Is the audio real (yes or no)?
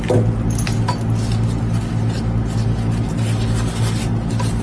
yes